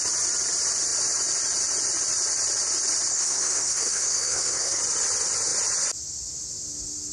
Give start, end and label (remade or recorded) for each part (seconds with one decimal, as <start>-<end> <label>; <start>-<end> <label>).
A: 0.0-3.1 recorded; 3.1-4.8 remade; 4.8-7.1 recorded